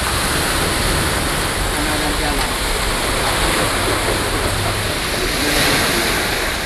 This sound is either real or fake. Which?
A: real